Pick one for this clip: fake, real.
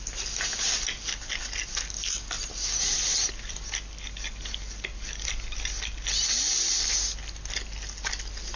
real